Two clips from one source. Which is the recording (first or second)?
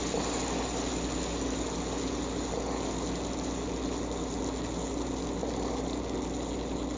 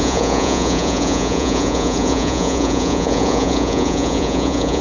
first